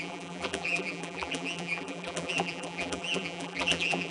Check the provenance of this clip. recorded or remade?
remade